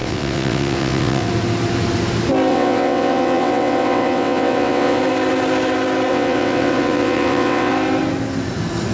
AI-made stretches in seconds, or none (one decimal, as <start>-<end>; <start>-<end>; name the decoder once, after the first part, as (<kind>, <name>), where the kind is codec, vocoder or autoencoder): 0.0-1.3 (vocoder, WaveNeXt); 2.5-5.0; 6.1-7.7